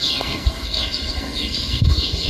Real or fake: fake